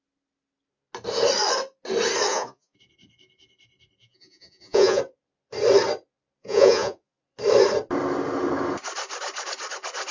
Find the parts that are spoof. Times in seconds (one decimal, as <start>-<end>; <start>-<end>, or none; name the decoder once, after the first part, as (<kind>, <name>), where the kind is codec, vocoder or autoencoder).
2.3-2.8 (vocoder, Vocos); 4.0-5.0; 6.4-7.2